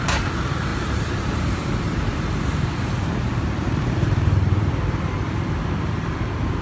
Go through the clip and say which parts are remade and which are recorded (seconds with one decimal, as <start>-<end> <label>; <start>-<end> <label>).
0.0-0.7 recorded; 0.7-4.7 remade; 4.7-6.6 recorded